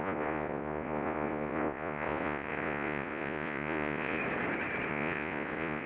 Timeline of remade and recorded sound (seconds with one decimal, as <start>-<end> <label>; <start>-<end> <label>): 0.0-4.2 remade; 4.2-4.9 recorded; 4.9-5.9 remade